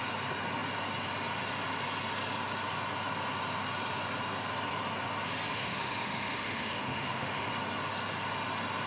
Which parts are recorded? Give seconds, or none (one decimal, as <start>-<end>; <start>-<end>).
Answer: 0.0-5.5; 7.5-8.9